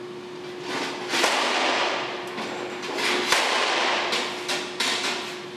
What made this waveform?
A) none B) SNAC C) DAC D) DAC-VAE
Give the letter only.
A